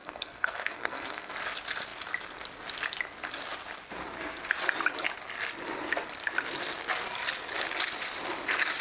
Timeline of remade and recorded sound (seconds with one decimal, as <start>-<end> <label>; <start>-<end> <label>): 0.0-1.3 remade; 1.3-8.8 recorded